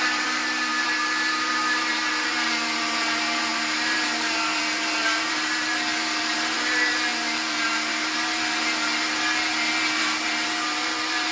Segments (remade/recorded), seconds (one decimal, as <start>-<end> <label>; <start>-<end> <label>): 0.0-11.3 remade